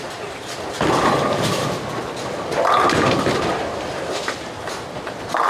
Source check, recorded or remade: recorded